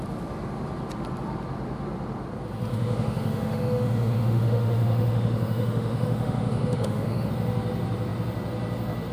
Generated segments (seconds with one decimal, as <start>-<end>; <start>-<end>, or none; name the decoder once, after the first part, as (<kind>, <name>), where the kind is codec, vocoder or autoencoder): 2.7-7.3 (autoencoder, DAC-VAE)

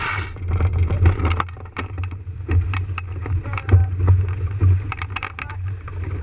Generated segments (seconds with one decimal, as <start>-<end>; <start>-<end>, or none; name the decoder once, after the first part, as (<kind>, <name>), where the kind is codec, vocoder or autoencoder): 0.0-0.7 (vocoder, BigVGAN v2); 3.2-3.8; 4.9-6.2

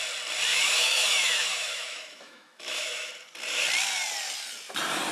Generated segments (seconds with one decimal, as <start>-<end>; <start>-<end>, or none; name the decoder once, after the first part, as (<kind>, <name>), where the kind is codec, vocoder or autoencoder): 0.5-3.1 (autoencoder, DAC-VAE)

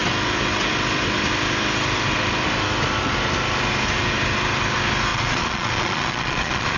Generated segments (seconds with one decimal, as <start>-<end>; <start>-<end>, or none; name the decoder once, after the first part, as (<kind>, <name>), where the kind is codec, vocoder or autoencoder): 5.1-6.8 (vocoder, Vocos)